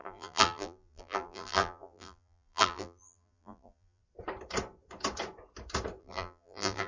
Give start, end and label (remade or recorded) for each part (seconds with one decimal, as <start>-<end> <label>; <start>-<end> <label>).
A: 0.0-4.0 remade; 4.0-6.0 recorded; 6.0-6.9 remade